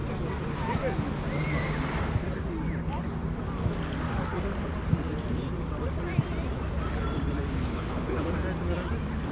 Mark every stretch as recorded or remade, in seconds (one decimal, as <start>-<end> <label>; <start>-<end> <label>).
0.0-7.6 recorded; 7.6-8.3 remade; 8.3-9.3 recorded